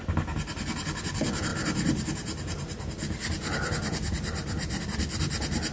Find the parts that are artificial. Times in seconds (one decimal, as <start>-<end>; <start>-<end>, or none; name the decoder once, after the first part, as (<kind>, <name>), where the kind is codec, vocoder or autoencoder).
1.5-4.8 (vocoder, BigVGAN v2)